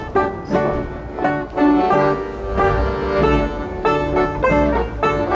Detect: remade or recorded recorded